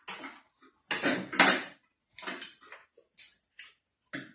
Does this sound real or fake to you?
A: real